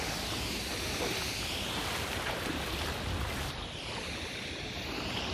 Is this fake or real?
real